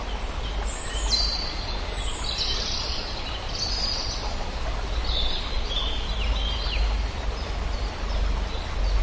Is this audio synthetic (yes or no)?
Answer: no